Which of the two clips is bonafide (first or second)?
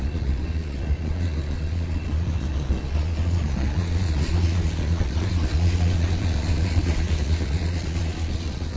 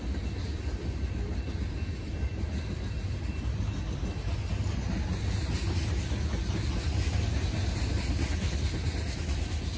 second